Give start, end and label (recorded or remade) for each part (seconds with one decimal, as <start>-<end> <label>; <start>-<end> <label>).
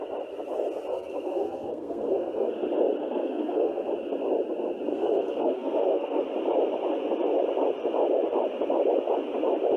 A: 0.0-0.9 recorded; 0.9-2.5 remade; 2.5-3.0 recorded; 3.0-3.9 remade; 3.9-4.9 recorded; 4.9-6.2 remade; 6.2-9.8 recorded